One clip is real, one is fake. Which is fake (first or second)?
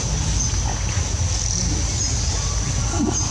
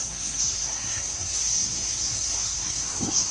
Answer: second